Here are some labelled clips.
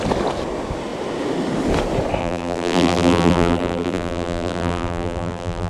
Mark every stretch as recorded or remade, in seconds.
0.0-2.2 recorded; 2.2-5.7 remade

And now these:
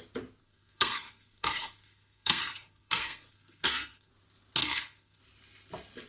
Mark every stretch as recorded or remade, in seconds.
0.0-0.4 recorded; 0.4-4.1 remade; 4.1-4.6 recorded; 4.6-5.2 remade; 5.2-6.1 recorded

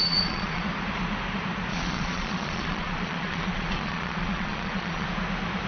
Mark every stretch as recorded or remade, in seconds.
0.0-0.6 remade; 0.6-1.7 recorded; 1.7-5.1 remade; 5.1-5.7 recorded

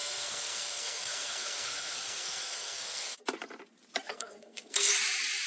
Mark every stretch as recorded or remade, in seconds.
0.0-3.2 remade; 3.2-4.1 recorded; 4.1-4.9 remade; 4.9-5.5 recorded

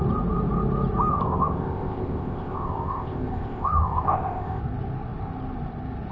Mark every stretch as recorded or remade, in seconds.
0.0-1.1 recorded; 1.1-4.6 remade; 4.6-6.1 recorded